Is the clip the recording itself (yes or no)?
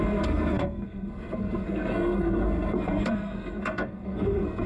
no